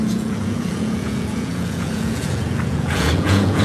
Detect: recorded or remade remade